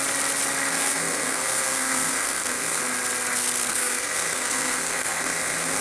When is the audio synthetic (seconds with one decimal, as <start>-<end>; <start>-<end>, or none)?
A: 0.7-2.8; 3.7-5.8